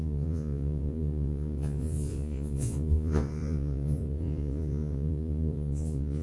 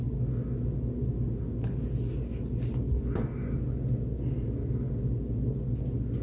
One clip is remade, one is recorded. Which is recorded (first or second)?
second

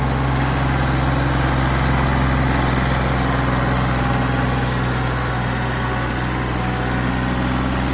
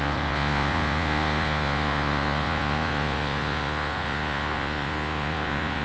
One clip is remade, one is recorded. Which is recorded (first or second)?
first